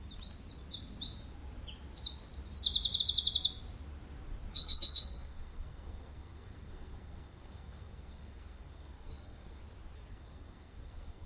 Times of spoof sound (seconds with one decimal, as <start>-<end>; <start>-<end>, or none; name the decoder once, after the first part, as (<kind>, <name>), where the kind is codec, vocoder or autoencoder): 4.5-9.6 (codec, SNAC); 10.1-11.3